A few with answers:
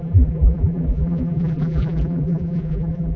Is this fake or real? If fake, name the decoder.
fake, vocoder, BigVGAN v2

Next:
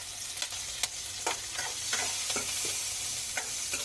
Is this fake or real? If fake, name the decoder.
real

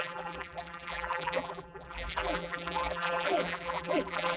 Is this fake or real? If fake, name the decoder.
fake, vocoder, BigVGAN v2